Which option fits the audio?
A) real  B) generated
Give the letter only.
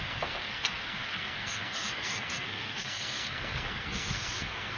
B